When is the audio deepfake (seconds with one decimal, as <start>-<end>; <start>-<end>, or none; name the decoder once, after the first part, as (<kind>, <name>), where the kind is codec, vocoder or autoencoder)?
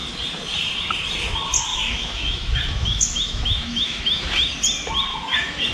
1.7-4.5 (autoencoder, DAC-VAE); 5.1-5.7